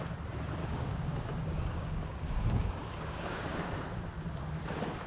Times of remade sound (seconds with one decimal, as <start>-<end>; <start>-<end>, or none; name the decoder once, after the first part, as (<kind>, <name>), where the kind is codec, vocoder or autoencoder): 0.6-3.7 (codec, DAC)